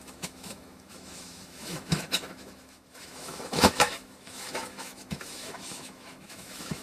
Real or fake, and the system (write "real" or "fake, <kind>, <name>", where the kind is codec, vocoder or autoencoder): fake, autoencoder, DAC-VAE